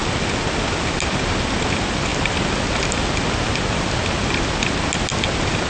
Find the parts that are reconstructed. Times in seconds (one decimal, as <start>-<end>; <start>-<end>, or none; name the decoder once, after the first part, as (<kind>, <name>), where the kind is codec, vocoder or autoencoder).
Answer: none